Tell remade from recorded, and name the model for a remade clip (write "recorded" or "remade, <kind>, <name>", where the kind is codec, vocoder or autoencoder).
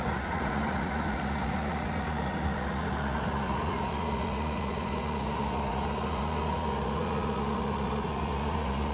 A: remade, vocoder, Vocos